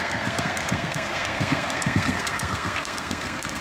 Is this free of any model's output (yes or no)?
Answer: no